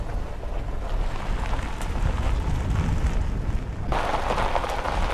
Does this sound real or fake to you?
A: real